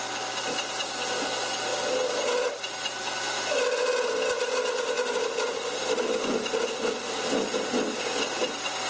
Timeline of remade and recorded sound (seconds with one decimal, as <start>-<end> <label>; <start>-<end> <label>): 0.0-8.9 recorded

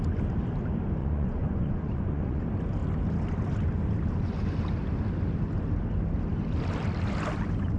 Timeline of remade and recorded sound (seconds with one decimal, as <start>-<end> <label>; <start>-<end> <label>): 0.0-1.0 recorded; 1.0-2.4 remade; 2.4-7.8 recorded

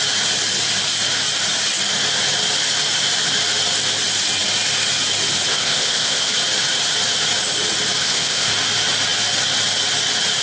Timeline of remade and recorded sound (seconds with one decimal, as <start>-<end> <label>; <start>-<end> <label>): 0.0-5.5 recorded; 5.5-6.3 remade; 6.3-8.0 recorded; 8.0-8.5 remade; 8.5-10.4 recorded